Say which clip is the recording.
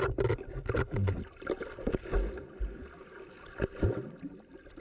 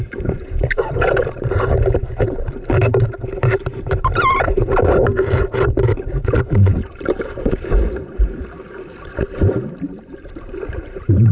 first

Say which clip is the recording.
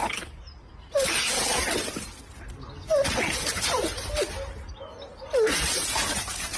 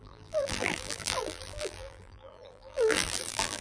first